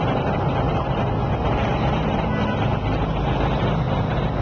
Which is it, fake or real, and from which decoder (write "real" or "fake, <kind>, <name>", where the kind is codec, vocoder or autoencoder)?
real